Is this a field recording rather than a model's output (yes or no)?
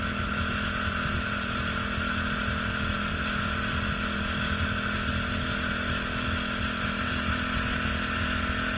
yes